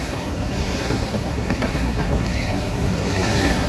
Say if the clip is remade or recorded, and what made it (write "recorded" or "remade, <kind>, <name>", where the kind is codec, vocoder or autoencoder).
remade, codec, SNAC